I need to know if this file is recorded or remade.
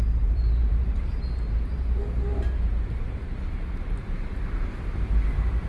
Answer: remade